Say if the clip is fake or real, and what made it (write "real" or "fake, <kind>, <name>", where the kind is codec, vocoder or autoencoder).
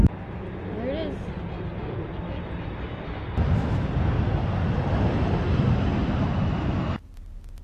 real